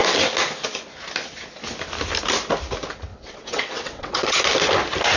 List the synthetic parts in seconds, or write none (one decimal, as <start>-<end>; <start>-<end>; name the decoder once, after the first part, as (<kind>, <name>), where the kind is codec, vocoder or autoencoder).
3.1-4.4 (vocoder, WaveNeXt)